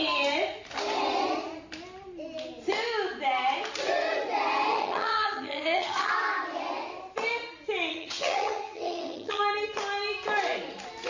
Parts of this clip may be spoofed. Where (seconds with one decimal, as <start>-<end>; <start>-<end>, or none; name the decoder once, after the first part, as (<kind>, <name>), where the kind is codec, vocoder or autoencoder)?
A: 4.7-6.1 (vocoder, HiFi-GAN); 7.9-9.4